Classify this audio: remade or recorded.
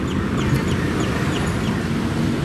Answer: recorded